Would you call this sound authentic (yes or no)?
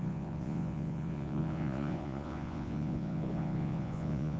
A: no